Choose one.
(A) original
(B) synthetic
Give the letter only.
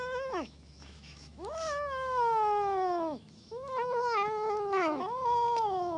B